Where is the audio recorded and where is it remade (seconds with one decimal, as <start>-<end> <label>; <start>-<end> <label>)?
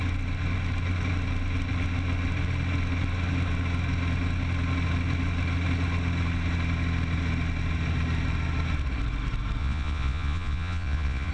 0.0-9.6 recorded; 9.6-11.3 remade